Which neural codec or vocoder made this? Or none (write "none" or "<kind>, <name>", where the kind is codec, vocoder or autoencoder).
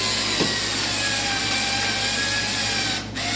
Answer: none